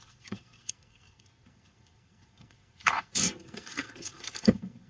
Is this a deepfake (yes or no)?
yes